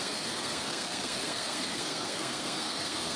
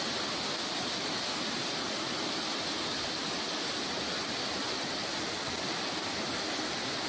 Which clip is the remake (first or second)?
first